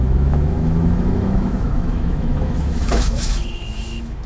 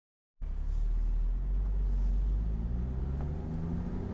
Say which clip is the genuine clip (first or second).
second